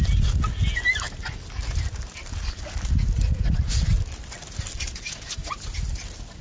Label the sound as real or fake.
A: real